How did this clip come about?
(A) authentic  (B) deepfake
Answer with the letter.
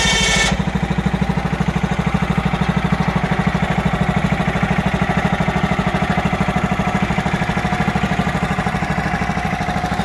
A